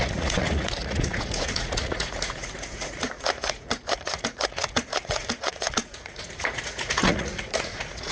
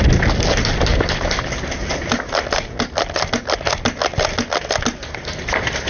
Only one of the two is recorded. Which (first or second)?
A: second